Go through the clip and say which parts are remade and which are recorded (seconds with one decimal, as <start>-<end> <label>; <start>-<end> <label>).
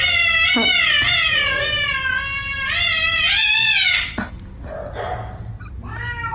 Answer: 0.0-6.3 recorded